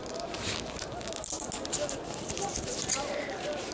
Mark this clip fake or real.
real